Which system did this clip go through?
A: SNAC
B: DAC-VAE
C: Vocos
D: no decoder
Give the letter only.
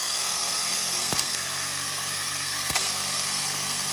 A